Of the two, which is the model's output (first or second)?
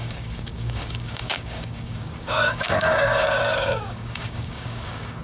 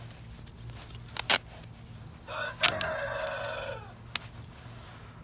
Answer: first